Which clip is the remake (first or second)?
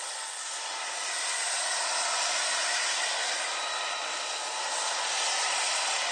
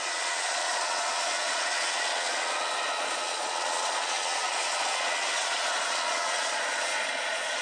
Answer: second